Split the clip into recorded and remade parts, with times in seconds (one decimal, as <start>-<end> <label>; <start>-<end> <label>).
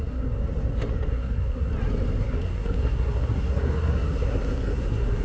0.0-0.4 remade; 0.4-1.1 recorded; 1.1-1.7 remade; 1.7-2.2 recorded; 2.2-5.2 remade